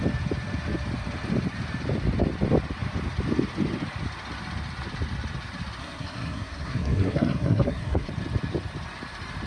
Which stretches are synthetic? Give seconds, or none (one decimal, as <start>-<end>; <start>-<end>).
5.8-8.1